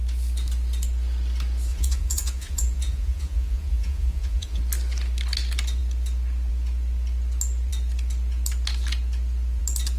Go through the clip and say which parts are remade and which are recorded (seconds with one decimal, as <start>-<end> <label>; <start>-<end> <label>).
0.0-1.7 recorded; 1.7-4.6 remade; 4.6-10.0 recorded